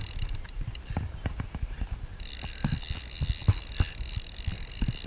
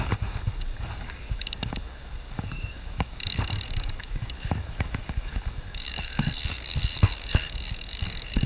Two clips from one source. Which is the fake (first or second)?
second